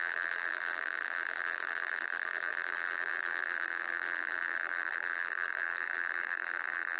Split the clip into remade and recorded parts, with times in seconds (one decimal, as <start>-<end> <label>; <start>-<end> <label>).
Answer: 0.0-7.0 remade